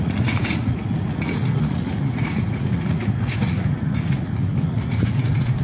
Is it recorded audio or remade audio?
remade